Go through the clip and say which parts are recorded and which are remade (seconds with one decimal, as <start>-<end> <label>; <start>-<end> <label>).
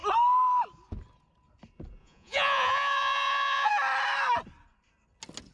0.0-2.0 recorded; 2.0-3.7 remade; 3.7-5.5 recorded